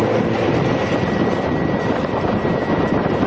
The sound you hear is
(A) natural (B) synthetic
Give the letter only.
B